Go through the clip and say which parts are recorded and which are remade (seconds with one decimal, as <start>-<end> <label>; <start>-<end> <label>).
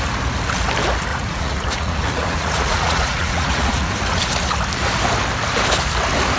0.0-1.1 recorded; 1.1-4.2 remade; 4.2-6.4 recorded